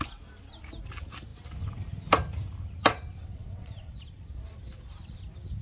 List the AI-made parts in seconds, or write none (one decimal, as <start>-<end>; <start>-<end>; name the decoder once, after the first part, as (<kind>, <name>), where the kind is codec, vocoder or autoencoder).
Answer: 3.2-4.0 (vocoder, WaveNeXt)